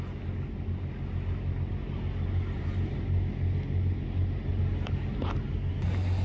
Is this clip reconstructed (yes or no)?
no